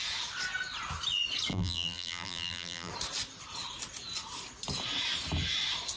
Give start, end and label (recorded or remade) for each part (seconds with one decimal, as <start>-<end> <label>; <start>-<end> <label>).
0.0-1.5 recorded; 1.5-2.9 remade; 2.9-6.0 recorded